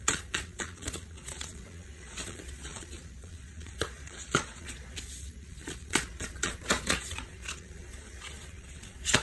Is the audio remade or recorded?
remade